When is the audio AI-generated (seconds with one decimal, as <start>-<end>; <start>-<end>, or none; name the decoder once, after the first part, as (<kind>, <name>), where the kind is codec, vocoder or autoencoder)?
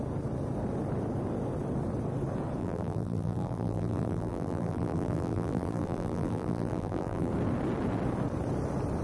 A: 2.6-7.3 (vocoder, BigVGAN v2)